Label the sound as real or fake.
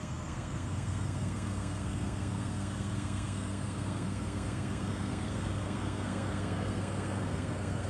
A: fake